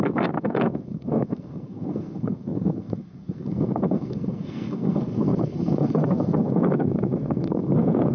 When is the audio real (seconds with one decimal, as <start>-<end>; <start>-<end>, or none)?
none